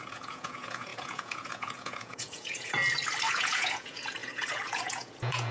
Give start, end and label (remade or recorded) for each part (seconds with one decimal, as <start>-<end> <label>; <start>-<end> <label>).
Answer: 0.0-2.8 remade; 2.8-3.3 recorded; 3.3-5.5 remade